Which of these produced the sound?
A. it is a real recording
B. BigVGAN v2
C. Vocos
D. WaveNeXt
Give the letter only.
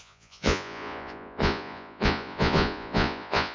C